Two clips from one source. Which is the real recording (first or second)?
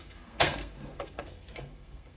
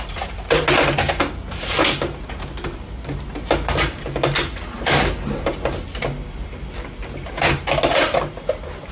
second